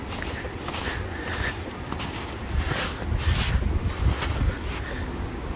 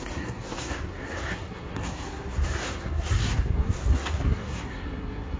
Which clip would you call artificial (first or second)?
second